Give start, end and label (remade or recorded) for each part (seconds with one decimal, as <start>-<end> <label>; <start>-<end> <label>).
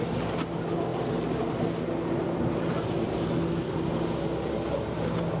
0.0-5.4 recorded